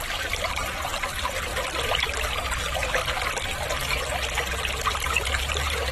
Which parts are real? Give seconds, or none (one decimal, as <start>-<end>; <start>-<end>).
1.5-2.6; 3.0-5.3